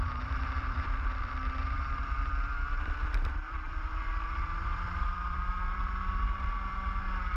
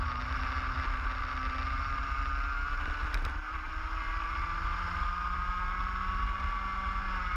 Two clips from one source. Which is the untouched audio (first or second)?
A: second